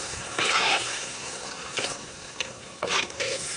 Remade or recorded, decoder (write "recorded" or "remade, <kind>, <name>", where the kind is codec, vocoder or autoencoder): remade, codec, SNAC